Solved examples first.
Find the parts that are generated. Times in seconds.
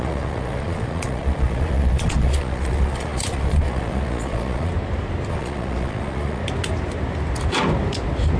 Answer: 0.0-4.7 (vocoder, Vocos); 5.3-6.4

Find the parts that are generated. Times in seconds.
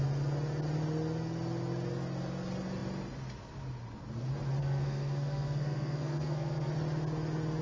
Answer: 4.6-6.7 (codec, SNAC)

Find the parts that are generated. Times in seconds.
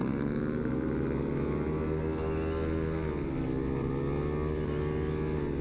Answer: none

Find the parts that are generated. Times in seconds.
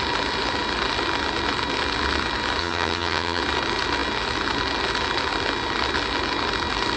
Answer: 2.6-3.4 (vocoder, HiFi-GAN)